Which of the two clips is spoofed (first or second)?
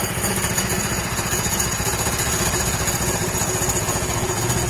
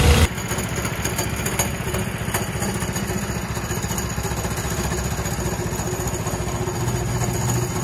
first